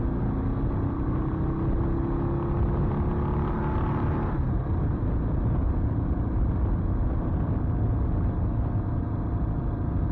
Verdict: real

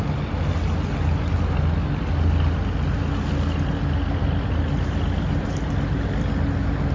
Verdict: real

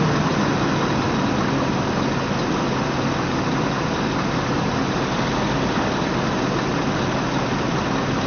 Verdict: real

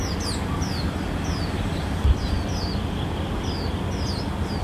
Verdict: real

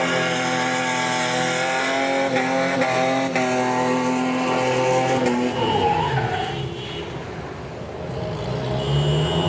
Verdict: real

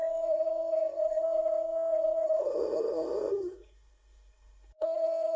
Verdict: fake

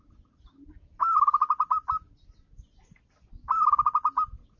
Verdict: real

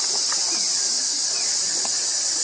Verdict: real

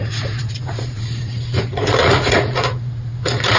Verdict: fake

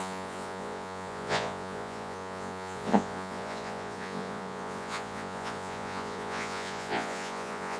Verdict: fake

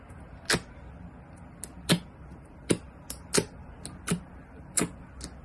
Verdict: real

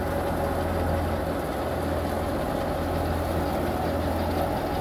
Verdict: real